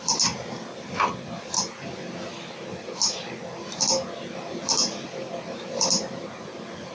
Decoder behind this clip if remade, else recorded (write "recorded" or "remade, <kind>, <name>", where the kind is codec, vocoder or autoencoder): recorded